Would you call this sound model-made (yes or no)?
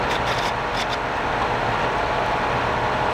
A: no